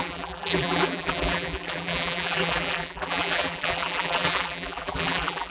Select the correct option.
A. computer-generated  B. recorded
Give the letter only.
A